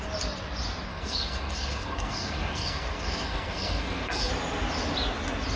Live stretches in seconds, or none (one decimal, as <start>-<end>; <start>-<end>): 0.0-0.9; 4.3-5.6